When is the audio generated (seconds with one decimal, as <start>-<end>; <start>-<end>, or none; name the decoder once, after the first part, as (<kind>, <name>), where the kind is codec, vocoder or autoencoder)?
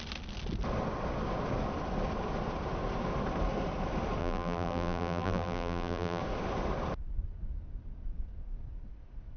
4.2-6.2 (vocoder, BigVGAN v2)